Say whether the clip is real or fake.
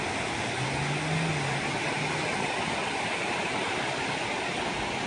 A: real